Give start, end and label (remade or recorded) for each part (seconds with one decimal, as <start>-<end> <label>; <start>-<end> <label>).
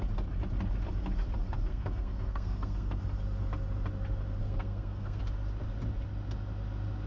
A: 0.0-1.7 recorded; 1.7-3.0 remade; 3.0-4.4 recorded; 4.4-5.2 remade; 5.2-7.1 recorded